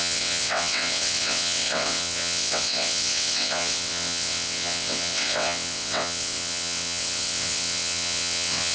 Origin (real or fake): fake